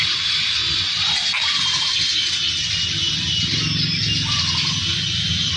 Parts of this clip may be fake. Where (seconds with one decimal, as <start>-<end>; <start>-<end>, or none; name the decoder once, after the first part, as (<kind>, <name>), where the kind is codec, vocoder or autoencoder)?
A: none